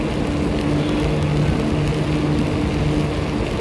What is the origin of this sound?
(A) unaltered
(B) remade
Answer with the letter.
A